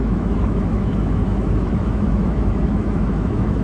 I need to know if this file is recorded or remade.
remade